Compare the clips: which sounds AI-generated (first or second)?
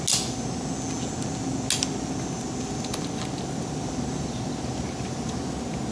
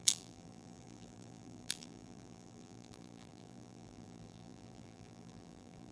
second